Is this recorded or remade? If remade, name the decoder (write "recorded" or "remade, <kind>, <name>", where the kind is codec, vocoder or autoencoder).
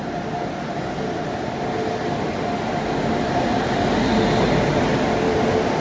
recorded